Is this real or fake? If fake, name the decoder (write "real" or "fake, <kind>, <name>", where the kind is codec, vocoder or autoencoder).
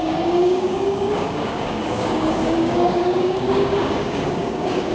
fake, codec, DAC